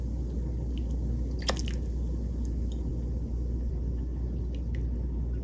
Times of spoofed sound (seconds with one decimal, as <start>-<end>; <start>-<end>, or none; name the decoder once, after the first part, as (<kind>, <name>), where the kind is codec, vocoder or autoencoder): none